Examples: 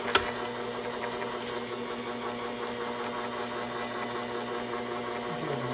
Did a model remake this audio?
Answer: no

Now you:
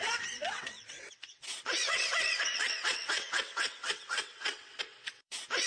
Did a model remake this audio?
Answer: yes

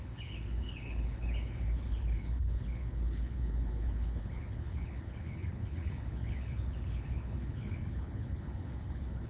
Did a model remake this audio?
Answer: yes